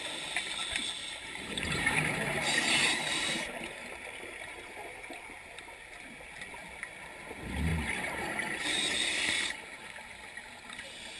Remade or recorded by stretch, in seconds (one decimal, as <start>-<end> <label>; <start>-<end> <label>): 0.0-1.0 recorded; 1.0-5.0 remade; 5.0-7.7 recorded; 7.7-9.0 remade; 9.0-11.2 recorded